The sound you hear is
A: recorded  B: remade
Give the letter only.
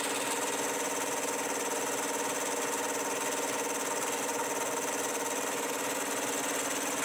A